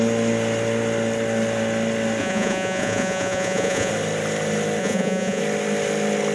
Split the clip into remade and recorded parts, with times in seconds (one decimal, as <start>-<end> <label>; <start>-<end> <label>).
0.0-2.2 recorded; 2.2-3.9 remade; 3.9-4.8 recorded; 4.8-5.4 remade; 5.4-6.3 recorded